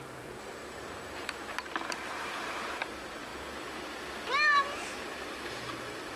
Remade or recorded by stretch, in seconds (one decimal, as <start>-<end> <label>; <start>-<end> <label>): 0.0-3.3 remade; 3.3-4.6 recorded; 4.6-6.2 remade